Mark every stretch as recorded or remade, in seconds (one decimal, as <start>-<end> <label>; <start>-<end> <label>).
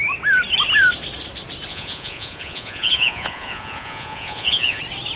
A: 0.0-1.7 recorded; 1.7-4.8 remade; 4.8-5.2 recorded